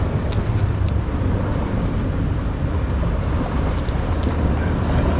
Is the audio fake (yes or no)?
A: no